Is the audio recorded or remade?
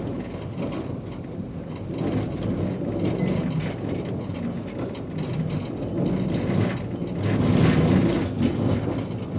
recorded